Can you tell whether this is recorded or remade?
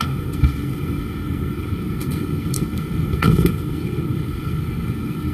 remade